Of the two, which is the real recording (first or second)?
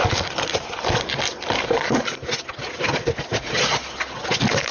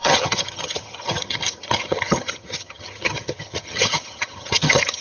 first